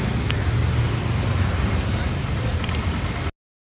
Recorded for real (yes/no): yes